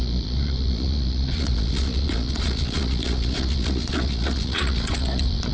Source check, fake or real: fake